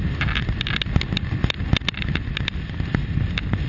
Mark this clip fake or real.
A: real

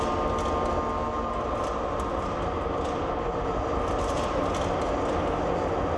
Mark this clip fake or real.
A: real